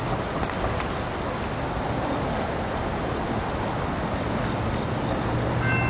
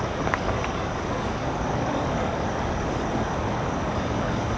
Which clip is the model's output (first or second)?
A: second